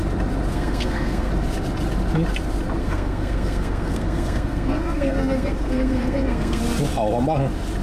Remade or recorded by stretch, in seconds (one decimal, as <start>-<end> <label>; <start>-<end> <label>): 0.0-0.5 recorded; 0.5-1.3 remade; 1.3-2.8 recorded; 2.8-6.6 remade; 6.6-7.8 recorded